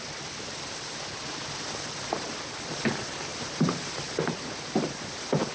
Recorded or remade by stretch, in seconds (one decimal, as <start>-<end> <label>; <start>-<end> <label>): 0.0-5.5 recorded